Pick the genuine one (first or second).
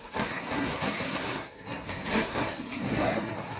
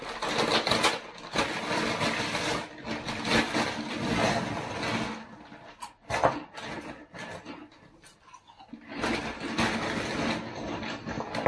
second